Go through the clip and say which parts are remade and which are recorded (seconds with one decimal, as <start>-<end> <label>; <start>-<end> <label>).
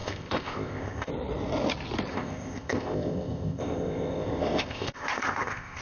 0.0-1.1 remade; 1.1-2.1 recorded; 2.1-5.8 remade